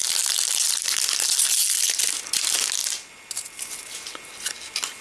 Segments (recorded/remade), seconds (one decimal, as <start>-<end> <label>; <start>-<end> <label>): 0.0-5.0 recorded